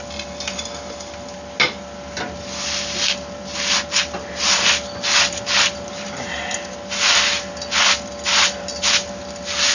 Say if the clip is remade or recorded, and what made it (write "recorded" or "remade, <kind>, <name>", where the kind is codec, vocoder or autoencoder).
recorded